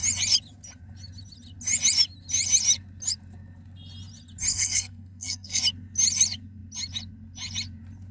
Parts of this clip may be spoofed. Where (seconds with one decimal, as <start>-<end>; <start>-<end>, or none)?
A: 4.5-5.6